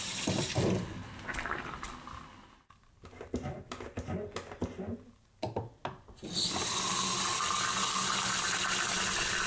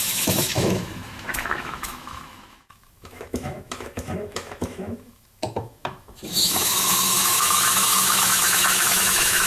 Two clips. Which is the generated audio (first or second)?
second